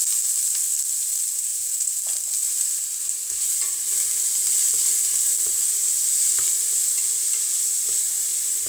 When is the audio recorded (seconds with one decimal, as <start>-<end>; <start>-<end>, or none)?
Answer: 0.0-1.5; 2.0-8.7